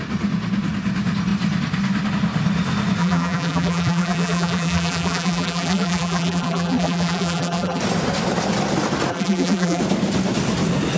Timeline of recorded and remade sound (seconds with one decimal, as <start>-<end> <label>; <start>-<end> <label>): 0.0-3.0 recorded; 3.0-7.8 remade; 7.8-9.1 recorded; 9.1-9.8 remade; 9.8-11.0 recorded